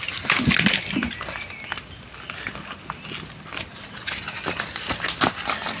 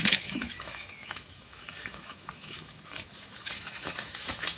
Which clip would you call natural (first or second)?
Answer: first